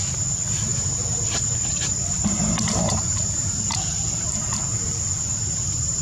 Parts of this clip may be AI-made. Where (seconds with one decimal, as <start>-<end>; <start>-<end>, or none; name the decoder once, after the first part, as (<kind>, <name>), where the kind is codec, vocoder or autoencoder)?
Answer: 0.7-4.3 (vocoder, BigVGAN v2); 5.3-6.0